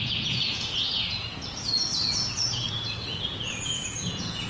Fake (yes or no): yes